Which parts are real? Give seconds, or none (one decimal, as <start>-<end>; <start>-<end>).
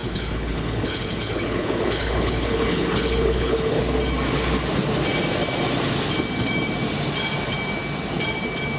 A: 3.8-8.8